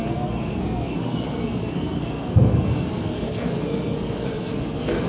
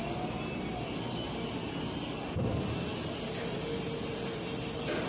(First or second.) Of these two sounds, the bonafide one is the second